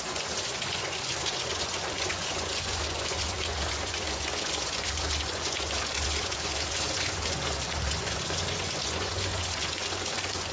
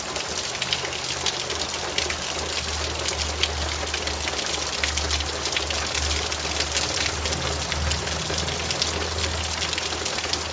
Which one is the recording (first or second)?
second